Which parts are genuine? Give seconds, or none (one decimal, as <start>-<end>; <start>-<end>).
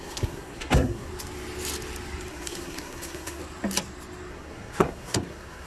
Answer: 1.1-2.3; 3.4-4.3